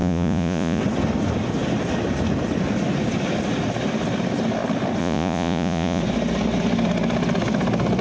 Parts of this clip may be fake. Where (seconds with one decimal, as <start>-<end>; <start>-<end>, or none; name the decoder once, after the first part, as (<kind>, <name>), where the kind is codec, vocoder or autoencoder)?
0.0-0.8 (vocoder, Vocos); 5.0-6.0